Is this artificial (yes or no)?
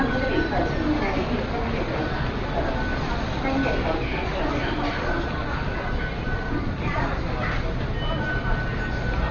no